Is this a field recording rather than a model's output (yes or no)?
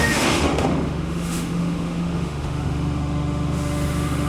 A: no